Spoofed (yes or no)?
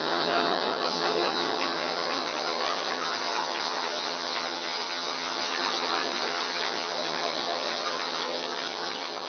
yes